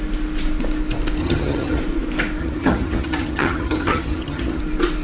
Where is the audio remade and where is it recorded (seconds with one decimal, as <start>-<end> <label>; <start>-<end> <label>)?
0.0-1.2 recorded; 1.2-1.8 remade; 1.8-2.4 recorded; 2.4-4.6 remade; 4.6-5.0 recorded